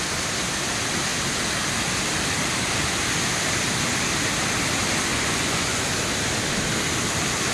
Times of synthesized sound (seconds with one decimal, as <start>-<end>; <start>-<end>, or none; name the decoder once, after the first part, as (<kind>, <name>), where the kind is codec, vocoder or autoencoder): 5.1-5.8 (vocoder, Vocos)